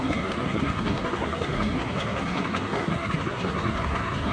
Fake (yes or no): yes